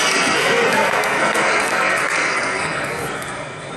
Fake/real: fake